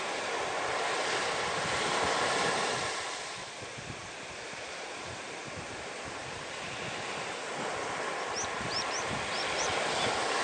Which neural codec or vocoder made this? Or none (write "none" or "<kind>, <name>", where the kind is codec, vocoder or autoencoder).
vocoder, BigVGAN v2